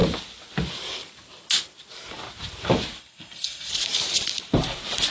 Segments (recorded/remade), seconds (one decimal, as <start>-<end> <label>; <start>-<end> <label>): 0.0-3.0 recorded; 3.0-3.7 remade; 3.7-5.1 recorded